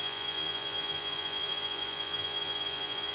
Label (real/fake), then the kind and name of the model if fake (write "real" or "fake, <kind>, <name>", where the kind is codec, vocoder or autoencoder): fake, vocoder, Vocos